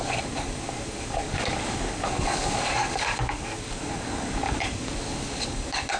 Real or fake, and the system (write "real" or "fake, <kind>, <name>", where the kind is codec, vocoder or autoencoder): fake, codec, DAC